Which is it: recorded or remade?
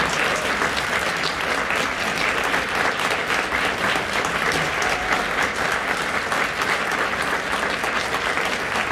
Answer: recorded